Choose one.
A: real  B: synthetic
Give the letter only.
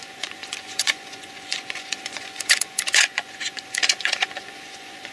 B